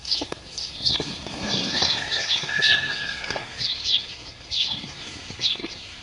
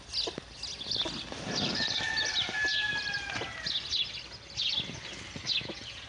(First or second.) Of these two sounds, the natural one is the second